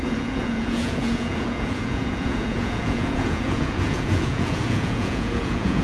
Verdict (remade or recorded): remade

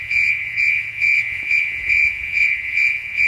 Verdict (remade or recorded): remade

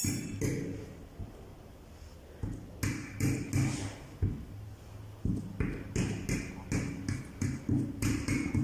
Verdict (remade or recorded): recorded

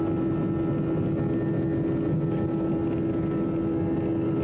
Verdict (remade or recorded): recorded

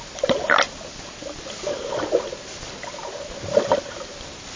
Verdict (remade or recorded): recorded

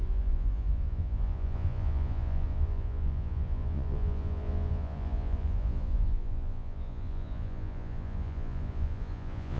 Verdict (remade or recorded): remade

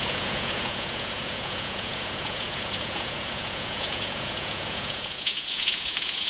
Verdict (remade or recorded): remade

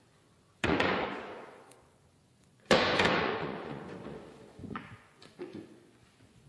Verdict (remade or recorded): remade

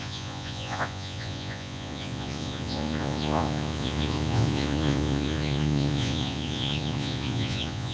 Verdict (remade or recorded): remade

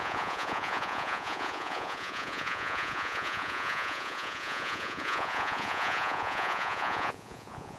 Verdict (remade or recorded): remade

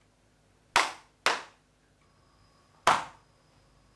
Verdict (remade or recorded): recorded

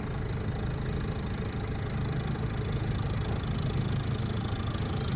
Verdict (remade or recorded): recorded